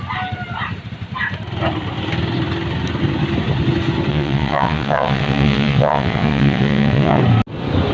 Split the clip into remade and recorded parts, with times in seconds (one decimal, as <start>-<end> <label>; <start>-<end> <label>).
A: 0.0-4.1 recorded; 4.1-7.2 remade; 7.2-7.9 recorded